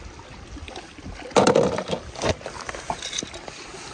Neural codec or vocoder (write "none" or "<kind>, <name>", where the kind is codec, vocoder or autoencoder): none